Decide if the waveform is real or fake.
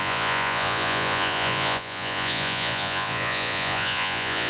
fake